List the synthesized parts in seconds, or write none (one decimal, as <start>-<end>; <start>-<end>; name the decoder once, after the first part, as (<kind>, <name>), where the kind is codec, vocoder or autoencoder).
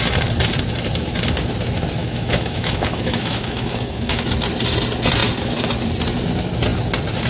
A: 2.0-4.2 (autoencoder, DAC-VAE)